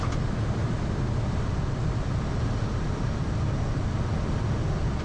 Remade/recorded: recorded